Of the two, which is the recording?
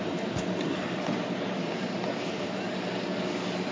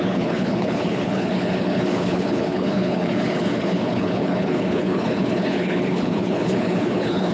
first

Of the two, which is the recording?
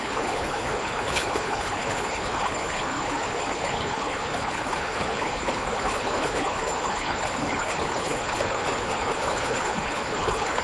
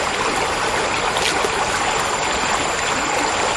second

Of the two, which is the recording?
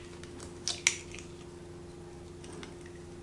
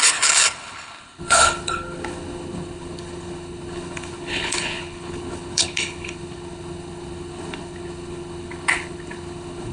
first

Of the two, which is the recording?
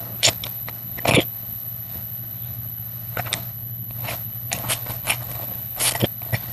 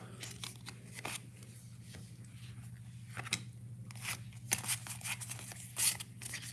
second